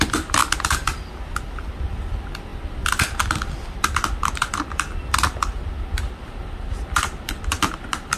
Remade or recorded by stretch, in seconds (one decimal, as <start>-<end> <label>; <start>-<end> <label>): 0.0-8.2 recorded